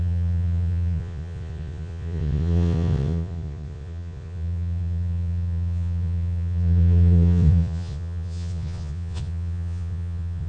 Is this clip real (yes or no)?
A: no